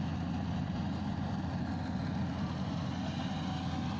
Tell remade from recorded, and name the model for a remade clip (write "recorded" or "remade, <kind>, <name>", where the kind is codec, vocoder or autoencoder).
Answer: recorded